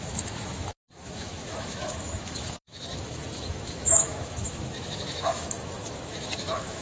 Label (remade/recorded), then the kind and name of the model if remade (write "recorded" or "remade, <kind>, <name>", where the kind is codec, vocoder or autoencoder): remade, autoencoder, DAC-VAE